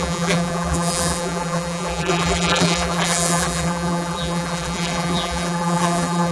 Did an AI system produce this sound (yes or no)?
yes